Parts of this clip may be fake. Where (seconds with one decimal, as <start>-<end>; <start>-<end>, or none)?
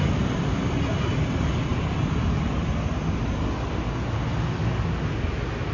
none